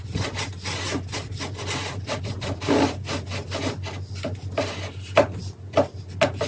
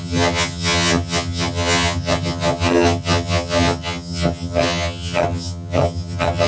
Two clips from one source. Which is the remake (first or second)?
second